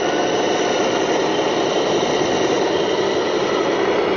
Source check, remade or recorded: recorded